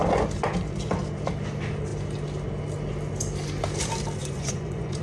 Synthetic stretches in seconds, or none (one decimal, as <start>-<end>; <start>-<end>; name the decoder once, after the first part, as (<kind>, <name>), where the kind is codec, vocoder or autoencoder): 4.2-5.0 (vocoder, Vocos)